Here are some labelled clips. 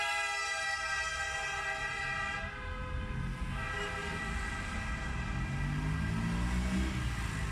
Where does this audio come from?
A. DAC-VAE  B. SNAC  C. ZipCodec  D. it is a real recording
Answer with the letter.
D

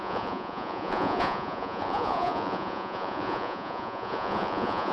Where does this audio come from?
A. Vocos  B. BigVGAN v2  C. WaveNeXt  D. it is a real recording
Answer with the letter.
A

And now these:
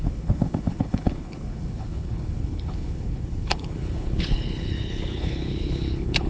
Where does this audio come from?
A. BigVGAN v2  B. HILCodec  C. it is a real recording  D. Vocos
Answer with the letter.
B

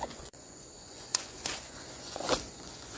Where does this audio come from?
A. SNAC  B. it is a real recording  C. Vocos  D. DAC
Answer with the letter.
C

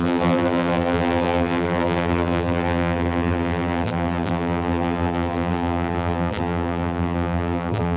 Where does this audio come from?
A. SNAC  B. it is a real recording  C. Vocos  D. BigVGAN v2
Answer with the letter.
D